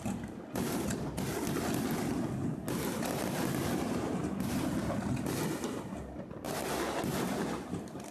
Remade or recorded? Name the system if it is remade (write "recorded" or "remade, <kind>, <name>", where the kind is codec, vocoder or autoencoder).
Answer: recorded